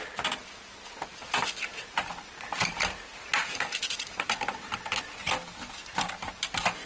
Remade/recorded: recorded